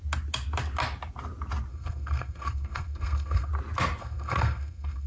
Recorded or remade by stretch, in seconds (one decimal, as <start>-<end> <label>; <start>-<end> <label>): 0.0-1.7 recorded; 1.7-3.5 remade; 3.5-4.0 recorded; 4.0-5.1 remade